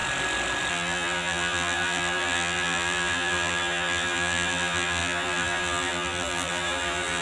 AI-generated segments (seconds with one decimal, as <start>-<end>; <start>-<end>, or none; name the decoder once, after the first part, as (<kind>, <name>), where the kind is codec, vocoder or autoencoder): 0.7-7.2 (vocoder, BigVGAN v2)